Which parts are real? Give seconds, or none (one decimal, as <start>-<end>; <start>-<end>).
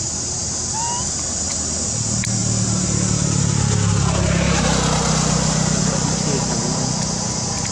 0.0-7.7